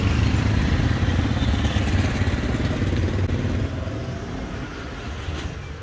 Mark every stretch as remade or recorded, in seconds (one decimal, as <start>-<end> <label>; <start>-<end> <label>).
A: 0.0-5.8 recorded